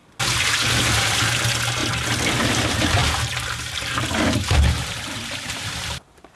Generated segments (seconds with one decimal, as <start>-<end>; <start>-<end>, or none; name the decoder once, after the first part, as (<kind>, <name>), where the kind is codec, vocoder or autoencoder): 1.2-1.8 (vocoder, BigVGAN v2); 2.3-6.4